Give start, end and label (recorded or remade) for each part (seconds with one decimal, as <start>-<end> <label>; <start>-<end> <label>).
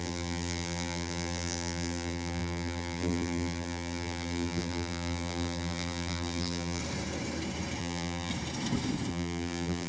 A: 0.0-6.8 remade; 6.8-7.8 recorded; 7.8-8.3 remade; 8.3-9.1 recorded; 9.1-9.9 remade